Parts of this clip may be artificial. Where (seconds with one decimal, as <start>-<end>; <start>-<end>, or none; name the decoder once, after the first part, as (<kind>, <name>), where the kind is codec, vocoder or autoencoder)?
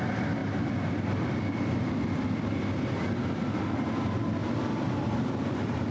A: 0.0-0.4 (vocoder, BigVGAN v2); 3.2-5.9